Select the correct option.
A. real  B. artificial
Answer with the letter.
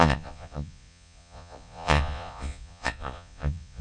B